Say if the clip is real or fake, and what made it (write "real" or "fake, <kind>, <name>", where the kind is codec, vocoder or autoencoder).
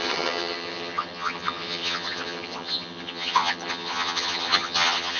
fake, vocoder, HiFi-GAN